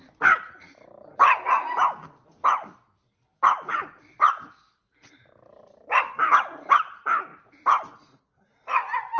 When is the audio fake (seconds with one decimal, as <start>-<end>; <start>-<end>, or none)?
none